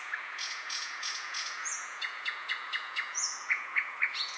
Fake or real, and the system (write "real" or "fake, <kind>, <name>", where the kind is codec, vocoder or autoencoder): fake, vocoder, Vocos